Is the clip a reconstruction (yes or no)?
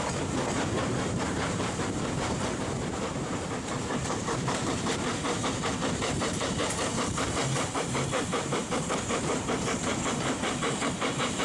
yes